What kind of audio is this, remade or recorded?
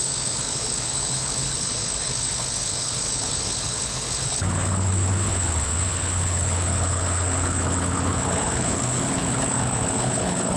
remade